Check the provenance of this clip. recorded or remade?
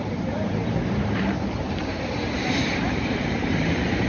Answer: remade